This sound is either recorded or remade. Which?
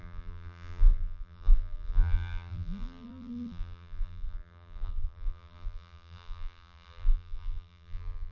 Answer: remade